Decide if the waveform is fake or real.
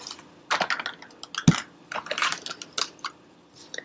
real